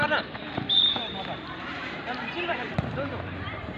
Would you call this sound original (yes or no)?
no